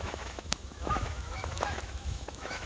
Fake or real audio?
fake